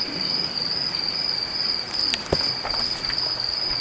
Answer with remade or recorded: recorded